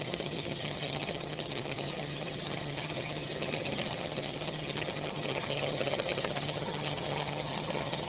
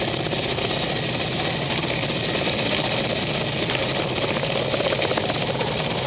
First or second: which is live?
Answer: second